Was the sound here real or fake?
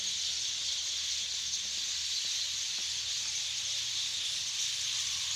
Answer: real